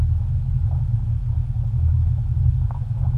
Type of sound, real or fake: real